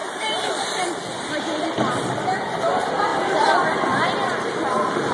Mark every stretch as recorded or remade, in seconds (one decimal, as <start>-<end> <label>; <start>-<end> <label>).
0.0-1.3 remade; 1.3-3.1 recorded; 3.1-3.6 remade; 3.6-5.1 recorded